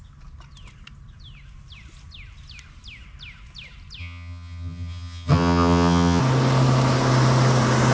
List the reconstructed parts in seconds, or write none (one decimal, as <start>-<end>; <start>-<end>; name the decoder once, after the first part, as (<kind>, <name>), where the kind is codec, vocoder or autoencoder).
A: 4.0-6.2 (vocoder, HiFi-GAN)

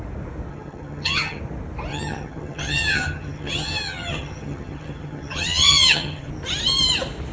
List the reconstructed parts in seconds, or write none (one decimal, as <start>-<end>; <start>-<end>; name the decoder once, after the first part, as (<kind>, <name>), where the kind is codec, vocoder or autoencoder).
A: 0.5-1.4 (vocoder, HiFi-GAN); 1.9-6.3

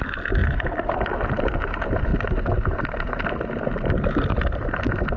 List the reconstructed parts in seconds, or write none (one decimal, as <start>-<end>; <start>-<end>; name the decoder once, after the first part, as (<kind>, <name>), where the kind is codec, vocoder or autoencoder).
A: none

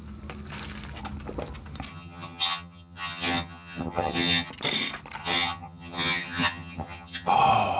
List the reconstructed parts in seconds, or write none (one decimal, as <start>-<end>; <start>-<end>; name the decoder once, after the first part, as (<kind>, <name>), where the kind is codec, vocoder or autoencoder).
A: 1.9-4.5 (vocoder, HiFi-GAN); 5.2-7.3

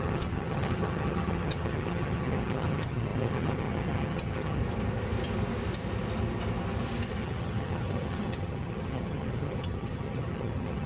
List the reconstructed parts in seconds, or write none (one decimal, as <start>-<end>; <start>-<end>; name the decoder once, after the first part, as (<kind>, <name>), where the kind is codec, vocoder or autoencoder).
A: 0.0-4.6 (vocoder, HiFi-GAN); 7.1-10.9

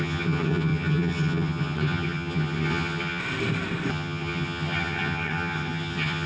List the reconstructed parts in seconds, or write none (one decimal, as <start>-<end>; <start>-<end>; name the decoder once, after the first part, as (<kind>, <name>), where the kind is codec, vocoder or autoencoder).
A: 0.0-3.2 (vocoder, HiFi-GAN); 3.9-6.3

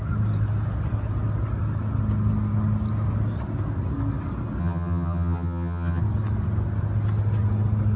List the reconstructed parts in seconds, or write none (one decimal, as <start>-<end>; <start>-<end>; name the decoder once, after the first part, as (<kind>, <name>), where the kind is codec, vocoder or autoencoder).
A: 4.6-6.0 (vocoder, HiFi-GAN)